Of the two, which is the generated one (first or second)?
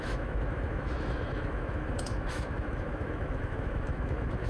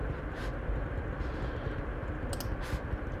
first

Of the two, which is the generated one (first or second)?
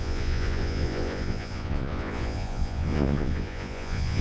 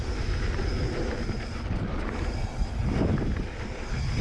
first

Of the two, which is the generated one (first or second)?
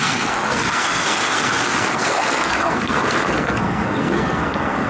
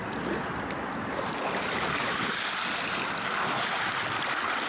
first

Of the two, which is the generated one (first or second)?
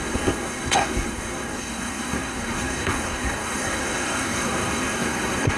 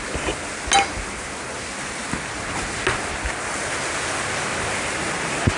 first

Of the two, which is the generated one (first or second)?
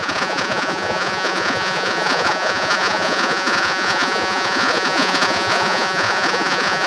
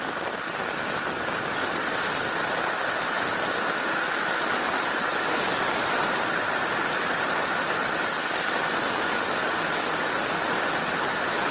first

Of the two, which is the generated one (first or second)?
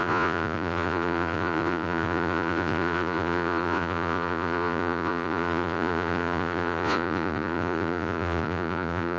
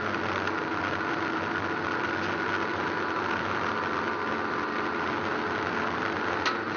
first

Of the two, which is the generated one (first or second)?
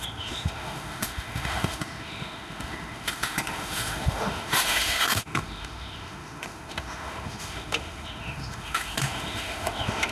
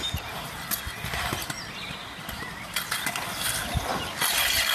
first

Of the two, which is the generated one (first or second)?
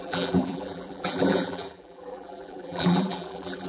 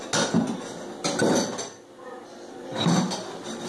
first